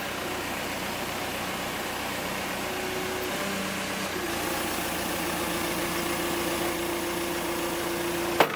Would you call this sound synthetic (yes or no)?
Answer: no